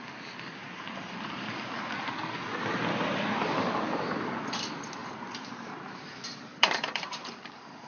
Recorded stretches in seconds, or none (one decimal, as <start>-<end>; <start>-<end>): 0.0-0.6; 2.1-5.0